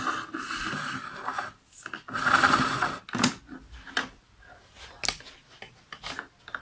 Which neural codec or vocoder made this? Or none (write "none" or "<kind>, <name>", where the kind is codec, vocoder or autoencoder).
none